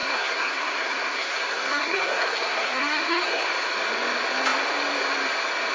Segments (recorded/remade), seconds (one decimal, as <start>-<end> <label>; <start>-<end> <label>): 0.0-3.4 remade; 3.4-5.7 recorded